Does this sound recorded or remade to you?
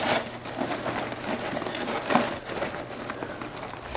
recorded